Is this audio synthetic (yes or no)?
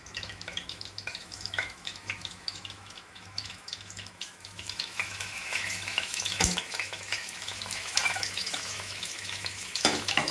yes